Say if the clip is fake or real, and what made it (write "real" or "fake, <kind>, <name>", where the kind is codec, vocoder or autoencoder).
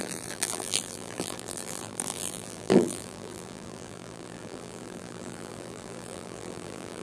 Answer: fake, vocoder, BigVGAN v2